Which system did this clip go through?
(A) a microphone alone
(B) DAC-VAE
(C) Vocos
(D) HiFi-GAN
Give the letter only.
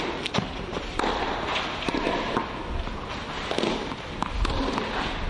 A